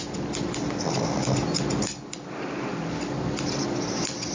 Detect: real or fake real